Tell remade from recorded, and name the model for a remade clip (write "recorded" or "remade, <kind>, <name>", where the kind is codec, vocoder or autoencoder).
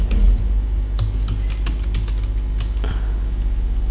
recorded